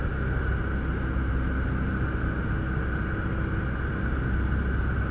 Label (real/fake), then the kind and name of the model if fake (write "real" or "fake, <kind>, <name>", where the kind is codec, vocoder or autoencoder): real